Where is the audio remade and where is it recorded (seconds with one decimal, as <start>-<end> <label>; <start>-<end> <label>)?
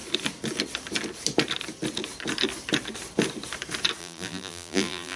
0.0-4.0 recorded; 4.0-5.2 remade